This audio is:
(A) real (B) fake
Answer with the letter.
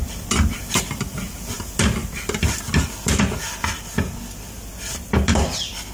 B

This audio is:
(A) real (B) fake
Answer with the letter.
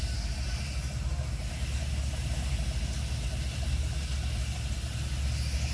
A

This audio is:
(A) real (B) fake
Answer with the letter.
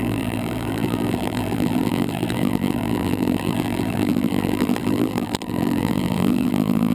B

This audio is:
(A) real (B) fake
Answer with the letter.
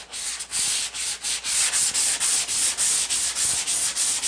A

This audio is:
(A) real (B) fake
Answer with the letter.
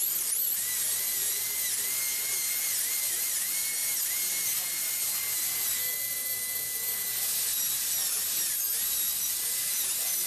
A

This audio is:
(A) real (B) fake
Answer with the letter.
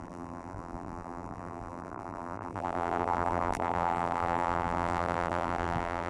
B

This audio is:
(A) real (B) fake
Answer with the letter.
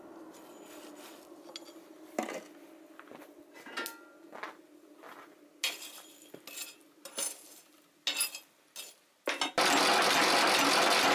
A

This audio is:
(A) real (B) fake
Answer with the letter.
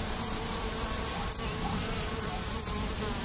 B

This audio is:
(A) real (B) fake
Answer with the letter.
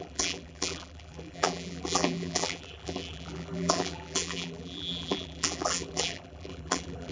B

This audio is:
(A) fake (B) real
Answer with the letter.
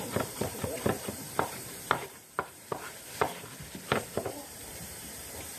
A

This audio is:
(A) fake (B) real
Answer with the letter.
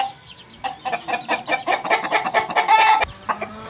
A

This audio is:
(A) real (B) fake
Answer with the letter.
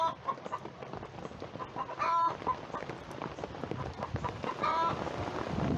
A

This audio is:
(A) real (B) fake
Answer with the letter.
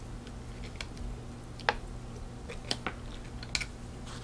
A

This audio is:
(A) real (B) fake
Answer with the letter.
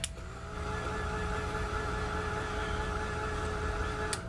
A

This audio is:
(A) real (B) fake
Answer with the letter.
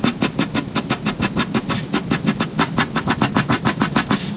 A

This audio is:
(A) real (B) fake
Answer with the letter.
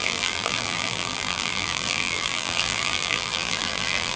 B